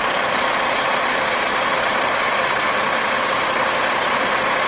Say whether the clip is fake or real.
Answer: real